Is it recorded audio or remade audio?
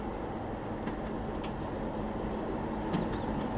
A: recorded